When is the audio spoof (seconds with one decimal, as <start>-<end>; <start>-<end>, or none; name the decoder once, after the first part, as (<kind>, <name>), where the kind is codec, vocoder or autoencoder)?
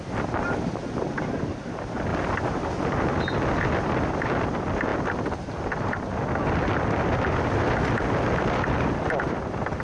0.0-0.8 (vocoder, BigVGAN v2); 1.4-2.1; 3.6-4.9; 6.4-9.8